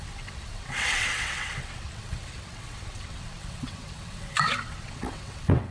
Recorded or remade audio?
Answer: remade